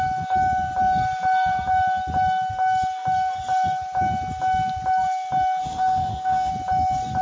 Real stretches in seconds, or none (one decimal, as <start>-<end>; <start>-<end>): 0.0-5.6; 6.5-7.2